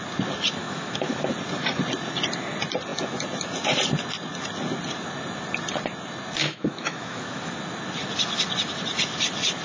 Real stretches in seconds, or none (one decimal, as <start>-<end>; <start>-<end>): 0.0-0.6; 1.3-6.4; 7.5-9.6